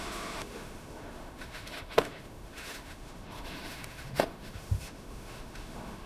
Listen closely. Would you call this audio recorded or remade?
remade